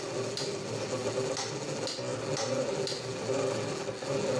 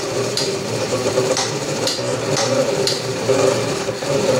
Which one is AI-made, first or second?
second